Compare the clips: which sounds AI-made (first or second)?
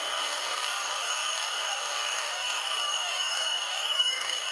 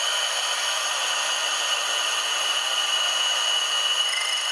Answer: first